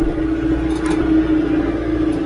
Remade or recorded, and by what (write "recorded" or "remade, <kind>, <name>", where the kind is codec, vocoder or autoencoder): recorded